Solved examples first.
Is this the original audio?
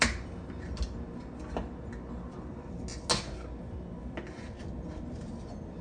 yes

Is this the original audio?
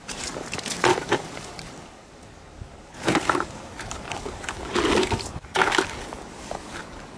no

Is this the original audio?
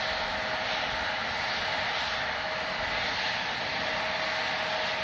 yes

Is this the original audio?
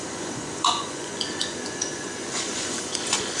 no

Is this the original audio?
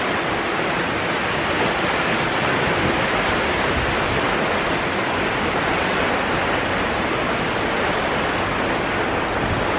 yes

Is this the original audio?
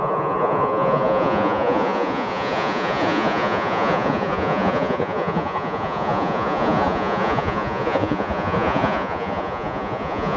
no